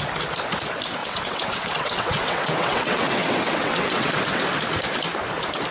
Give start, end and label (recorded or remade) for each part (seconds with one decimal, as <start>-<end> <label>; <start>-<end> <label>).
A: 0.0-1.0 recorded; 1.0-4.4 remade; 4.4-5.7 recorded